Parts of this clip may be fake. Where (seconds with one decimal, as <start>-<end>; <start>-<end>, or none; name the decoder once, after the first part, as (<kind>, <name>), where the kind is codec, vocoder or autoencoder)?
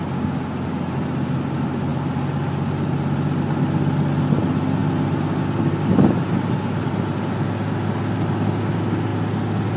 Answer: none